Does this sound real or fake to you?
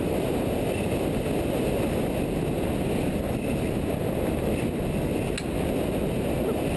real